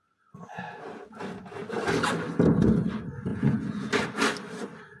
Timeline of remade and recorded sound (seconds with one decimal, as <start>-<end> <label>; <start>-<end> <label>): 0.0-3.3 recorded; 3.3-3.9 remade; 3.9-5.0 recorded